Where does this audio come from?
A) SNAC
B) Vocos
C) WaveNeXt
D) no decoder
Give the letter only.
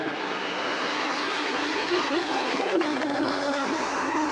A